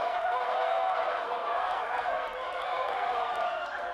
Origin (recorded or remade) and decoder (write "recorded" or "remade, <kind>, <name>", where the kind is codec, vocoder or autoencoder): remade, codec, SNAC